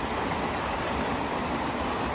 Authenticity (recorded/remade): recorded